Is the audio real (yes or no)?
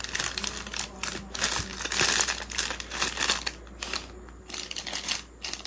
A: yes